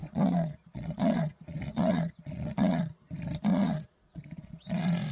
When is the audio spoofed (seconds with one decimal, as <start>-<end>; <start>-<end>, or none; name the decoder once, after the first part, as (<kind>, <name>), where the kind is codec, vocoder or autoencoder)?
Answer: 0.0-2.8 (vocoder, Vocos); 3.5-5.1